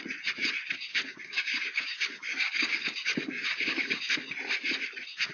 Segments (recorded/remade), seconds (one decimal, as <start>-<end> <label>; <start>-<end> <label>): 0.0-0.9 recorded; 0.9-4.1 remade; 4.1-5.3 recorded